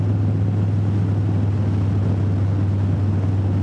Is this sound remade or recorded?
recorded